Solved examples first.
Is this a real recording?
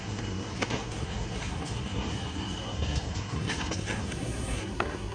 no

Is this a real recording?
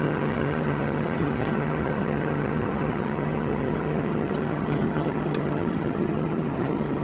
no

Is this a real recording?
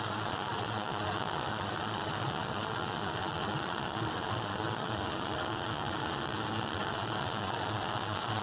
no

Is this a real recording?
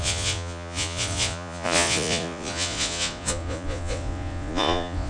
no